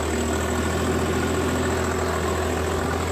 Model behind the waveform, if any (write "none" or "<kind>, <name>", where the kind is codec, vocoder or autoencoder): none